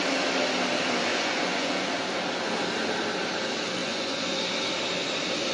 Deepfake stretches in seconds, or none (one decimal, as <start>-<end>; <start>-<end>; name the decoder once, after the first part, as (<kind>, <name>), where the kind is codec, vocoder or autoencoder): 1.1-1.9 (vocoder, Vocos); 3.8-4.4

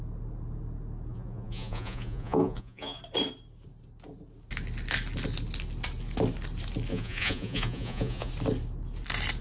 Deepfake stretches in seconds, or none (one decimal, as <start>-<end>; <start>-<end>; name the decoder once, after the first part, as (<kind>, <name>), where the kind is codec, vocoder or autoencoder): 1.1-3.0 (vocoder, Vocos); 6.9-8.3